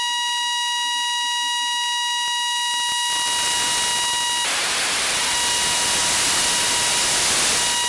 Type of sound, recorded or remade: recorded